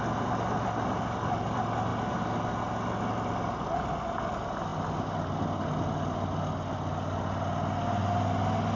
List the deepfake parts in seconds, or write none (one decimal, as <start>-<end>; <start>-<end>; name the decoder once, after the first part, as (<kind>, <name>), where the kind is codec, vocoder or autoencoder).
none